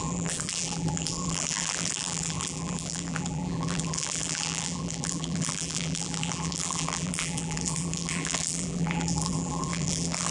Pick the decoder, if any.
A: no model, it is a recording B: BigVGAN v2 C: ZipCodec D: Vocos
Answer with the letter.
B